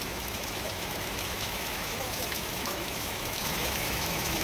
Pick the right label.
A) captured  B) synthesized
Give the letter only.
B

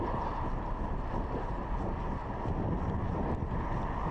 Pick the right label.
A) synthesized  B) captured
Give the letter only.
B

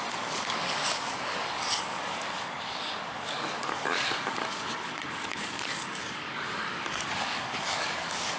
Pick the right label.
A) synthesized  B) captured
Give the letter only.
A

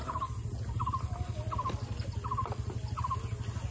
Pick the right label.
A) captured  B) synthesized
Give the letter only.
A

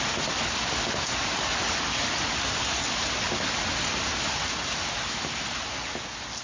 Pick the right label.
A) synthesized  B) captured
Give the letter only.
B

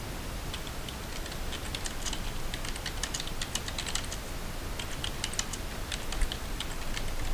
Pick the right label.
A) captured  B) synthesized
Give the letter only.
A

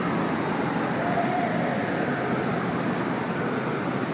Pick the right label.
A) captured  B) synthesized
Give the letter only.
A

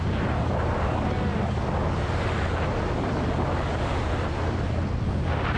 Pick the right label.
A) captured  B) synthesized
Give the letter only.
A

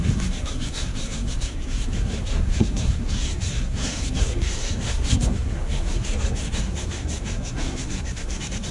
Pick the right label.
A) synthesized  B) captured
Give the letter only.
A